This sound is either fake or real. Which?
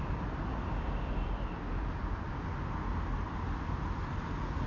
real